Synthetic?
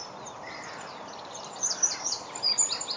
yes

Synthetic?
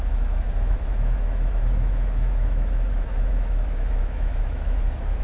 yes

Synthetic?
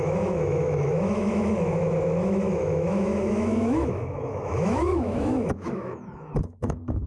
yes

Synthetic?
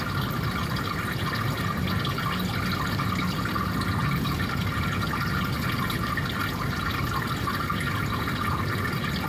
no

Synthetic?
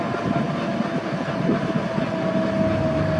no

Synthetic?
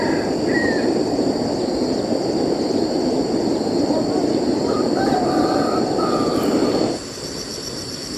yes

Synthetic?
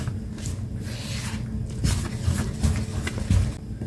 no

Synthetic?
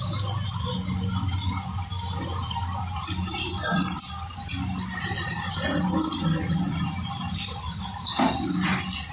no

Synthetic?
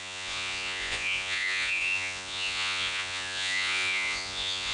yes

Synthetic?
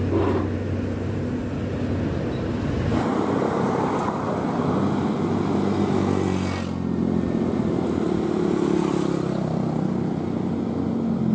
no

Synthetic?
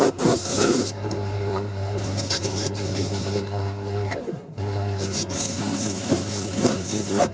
yes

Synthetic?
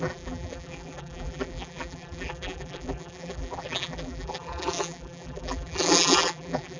yes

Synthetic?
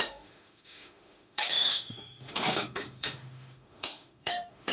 yes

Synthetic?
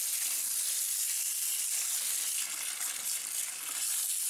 no